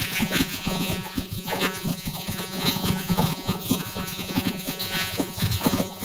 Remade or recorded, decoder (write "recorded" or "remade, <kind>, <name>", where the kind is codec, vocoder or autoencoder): remade, vocoder, Vocos